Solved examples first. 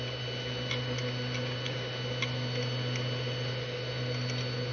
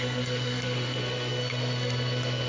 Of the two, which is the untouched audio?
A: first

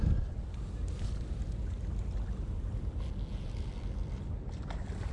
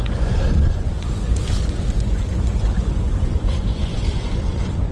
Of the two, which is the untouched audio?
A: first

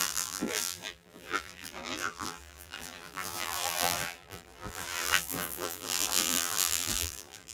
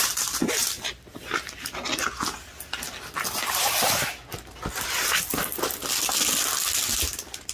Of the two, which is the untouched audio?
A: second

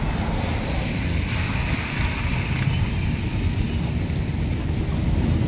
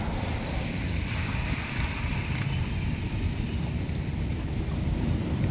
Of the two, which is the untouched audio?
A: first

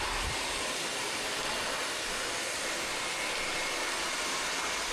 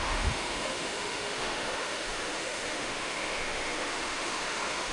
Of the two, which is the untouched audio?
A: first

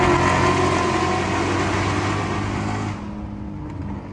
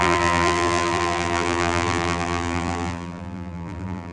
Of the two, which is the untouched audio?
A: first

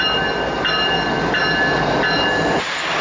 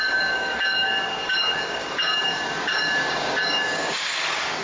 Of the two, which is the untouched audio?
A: first